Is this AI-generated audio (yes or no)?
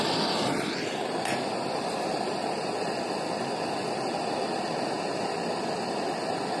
no